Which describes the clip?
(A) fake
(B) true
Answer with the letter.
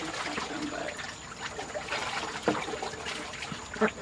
A